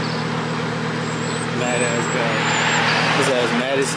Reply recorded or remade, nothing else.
recorded